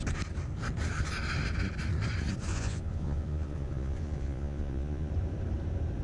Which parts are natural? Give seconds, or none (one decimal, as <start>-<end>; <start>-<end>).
0.0-2.5; 5.1-6.0